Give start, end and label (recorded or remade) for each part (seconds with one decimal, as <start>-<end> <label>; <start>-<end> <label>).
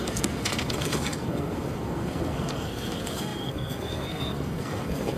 0.0-5.2 remade